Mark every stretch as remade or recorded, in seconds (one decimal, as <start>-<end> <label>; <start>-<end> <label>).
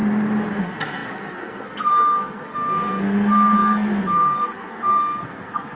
0.0-0.6 recorded; 0.6-5.8 remade